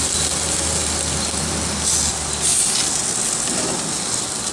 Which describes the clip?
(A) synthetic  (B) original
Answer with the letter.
B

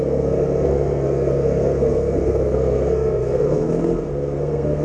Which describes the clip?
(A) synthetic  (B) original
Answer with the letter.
A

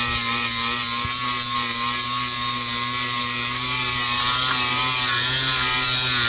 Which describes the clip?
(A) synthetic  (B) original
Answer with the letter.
B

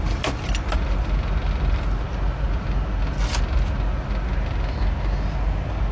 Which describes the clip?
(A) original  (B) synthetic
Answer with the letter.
A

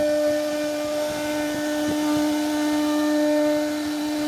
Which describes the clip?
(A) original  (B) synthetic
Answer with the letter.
A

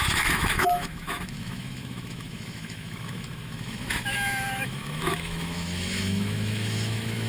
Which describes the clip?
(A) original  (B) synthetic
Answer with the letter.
B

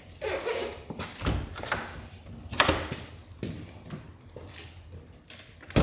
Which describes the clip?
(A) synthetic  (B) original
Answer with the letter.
B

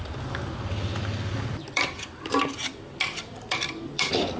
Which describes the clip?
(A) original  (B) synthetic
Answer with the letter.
B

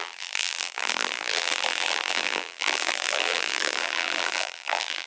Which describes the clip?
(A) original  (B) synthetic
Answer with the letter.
B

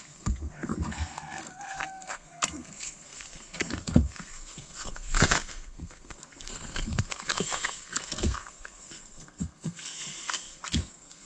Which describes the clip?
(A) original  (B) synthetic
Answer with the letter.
B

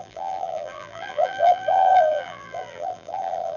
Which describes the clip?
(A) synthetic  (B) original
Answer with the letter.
A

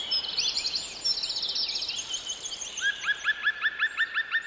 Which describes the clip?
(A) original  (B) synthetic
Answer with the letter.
A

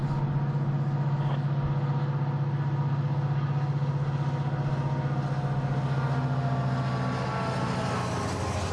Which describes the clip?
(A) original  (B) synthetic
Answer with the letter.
A